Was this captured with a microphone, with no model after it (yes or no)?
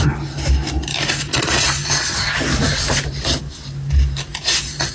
yes